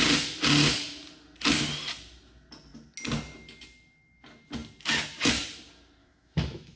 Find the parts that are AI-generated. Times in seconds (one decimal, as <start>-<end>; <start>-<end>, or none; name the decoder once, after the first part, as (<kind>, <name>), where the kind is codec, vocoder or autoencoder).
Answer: 6.0-6.8 (autoencoder, DAC-VAE)